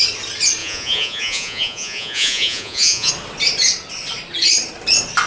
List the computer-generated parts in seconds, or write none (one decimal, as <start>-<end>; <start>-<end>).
0.6-3.1